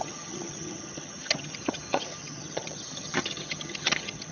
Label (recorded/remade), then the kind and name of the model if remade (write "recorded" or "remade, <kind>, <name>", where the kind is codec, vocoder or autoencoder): remade, vocoder, HiFi-GAN